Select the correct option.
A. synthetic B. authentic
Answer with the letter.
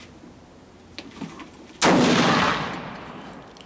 B